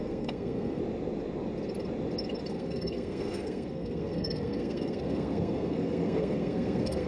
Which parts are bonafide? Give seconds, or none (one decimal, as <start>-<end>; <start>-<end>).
0.8-2.5